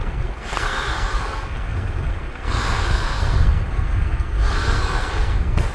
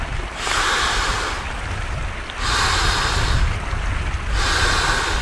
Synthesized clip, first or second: first